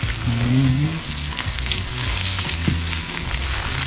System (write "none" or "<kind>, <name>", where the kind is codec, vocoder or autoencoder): codec, SNAC